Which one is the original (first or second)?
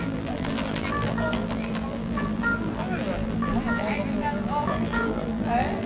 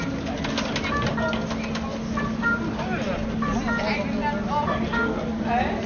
second